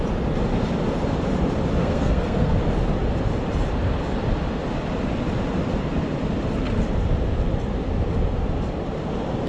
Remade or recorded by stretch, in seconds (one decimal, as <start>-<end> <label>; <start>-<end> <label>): 0.0-1.8 recorded; 1.8-2.6 remade; 2.6-9.5 recorded